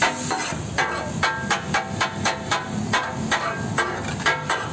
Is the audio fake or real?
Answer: real